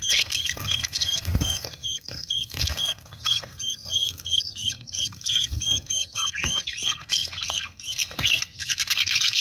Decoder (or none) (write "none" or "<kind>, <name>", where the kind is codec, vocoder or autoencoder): codec, SNAC